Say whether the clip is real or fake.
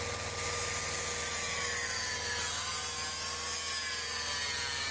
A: real